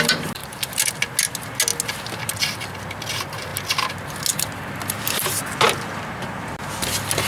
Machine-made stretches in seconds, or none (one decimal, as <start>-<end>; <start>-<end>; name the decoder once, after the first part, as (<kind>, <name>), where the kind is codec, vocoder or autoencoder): none